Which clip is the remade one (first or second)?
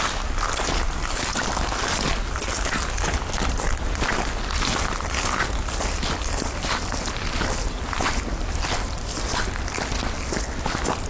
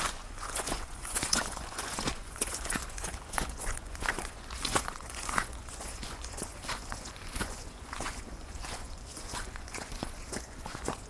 second